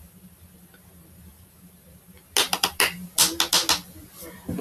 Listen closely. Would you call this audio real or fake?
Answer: real